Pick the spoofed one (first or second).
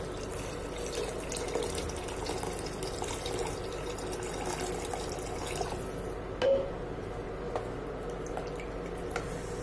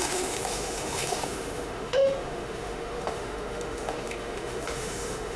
second